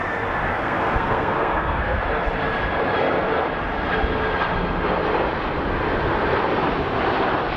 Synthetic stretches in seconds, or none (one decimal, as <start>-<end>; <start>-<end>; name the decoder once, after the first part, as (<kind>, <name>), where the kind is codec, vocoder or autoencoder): 0.5-2.0 (codec, SNAC)